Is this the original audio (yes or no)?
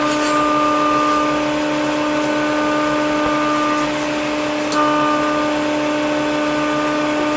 yes